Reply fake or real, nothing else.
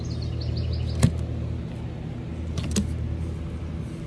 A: real